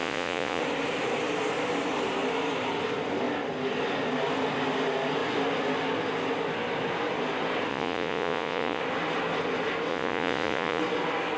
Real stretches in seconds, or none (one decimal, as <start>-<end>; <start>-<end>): 0.6-7.7; 8.8-9.9; 10.8-11.4